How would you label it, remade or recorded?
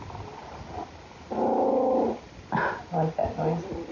recorded